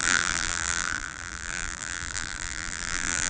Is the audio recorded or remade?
remade